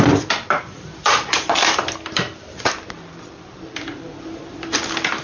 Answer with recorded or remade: remade